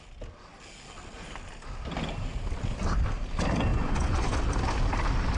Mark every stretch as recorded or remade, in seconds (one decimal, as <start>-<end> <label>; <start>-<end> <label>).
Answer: 0.0-3.7 recorded; 3.7-4.4 remade; 4.4-5.4 recorded